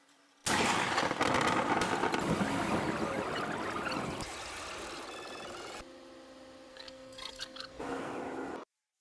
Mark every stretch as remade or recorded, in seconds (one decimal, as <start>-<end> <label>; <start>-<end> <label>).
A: 0.0-6.7 recorded; 6.7-8.1 remade; 8.1-9.0 recorded